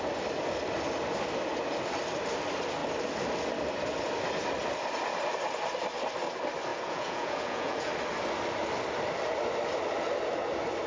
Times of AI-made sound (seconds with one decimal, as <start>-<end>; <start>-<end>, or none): 6.7-7.9